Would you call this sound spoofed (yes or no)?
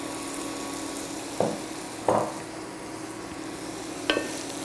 no